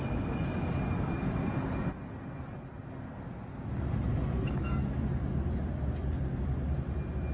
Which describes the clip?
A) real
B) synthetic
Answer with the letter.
A